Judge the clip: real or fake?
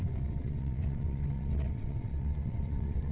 fake